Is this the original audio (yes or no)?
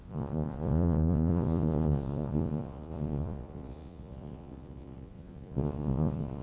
no